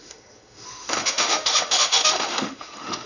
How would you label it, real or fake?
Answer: fake